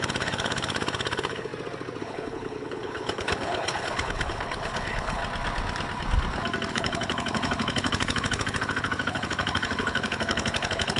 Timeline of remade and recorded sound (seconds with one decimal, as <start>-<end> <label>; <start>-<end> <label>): 0.0-1.5 remade; 1.5-2.0 recorded; 2.0-5.2 remade; 5.2-6.7 recorded; 6.7-11.0 remade